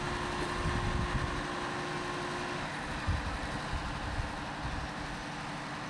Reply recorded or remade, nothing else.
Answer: recorded